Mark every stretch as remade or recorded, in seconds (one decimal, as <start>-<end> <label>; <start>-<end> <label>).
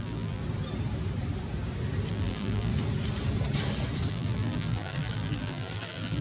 0.0-0.4 remade; 0.4-2.1 recorded; 2.1-2.7 remade; 2.7-4.1 recorded; 4.1-6.2 remade